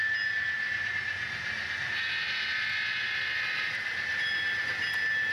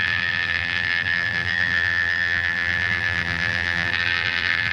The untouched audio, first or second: first